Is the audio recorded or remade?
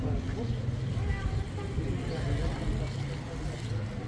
recorded